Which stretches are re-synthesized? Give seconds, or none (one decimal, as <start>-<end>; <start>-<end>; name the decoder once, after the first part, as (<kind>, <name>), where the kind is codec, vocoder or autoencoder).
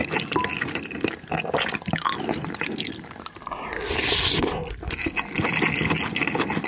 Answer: none